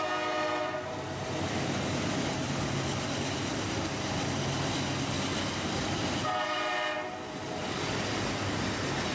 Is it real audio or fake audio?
real